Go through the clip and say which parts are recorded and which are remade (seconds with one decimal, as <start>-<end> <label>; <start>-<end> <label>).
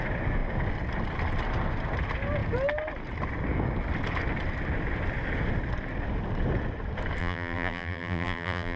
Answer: 0.0-7.2 recorded; 7.2-8.8 remade